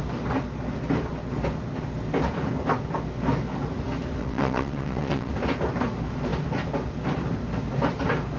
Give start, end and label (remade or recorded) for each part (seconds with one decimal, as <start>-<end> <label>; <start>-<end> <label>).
0.0-4.2 recorded; 4.2-5.3 remade; 5.3-8.4 recorded

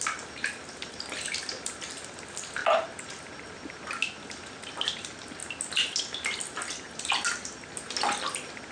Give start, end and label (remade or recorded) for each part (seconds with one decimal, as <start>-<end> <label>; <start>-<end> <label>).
0.0-8.7 recorded

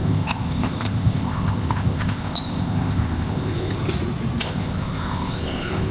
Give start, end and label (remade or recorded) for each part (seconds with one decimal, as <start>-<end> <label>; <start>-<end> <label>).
0.0-3.8 remade; 3.8-4.4 recorded; 4.4-5.9 remade